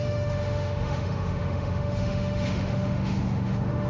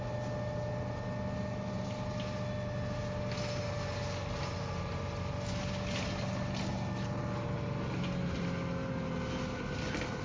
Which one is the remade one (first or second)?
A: first